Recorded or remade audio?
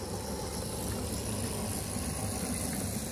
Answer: recorded